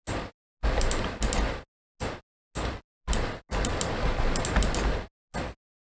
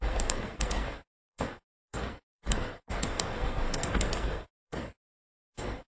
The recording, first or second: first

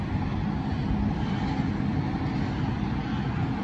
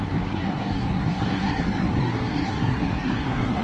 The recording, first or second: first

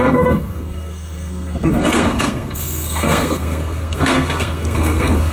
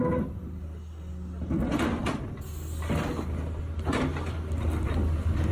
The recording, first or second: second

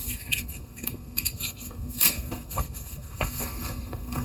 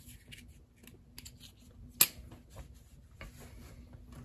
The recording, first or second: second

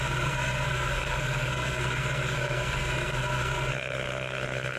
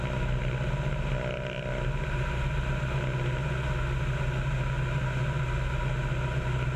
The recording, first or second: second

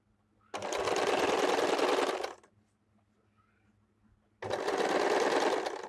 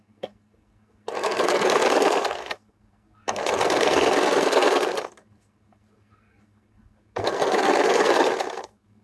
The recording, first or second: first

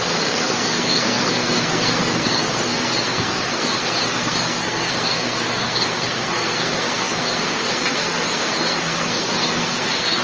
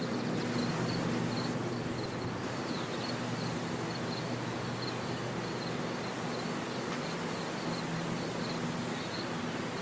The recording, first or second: second